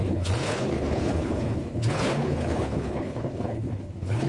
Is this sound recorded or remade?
remade